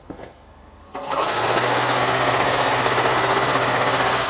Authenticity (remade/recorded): remade